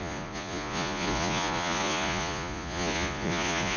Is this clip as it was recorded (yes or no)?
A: no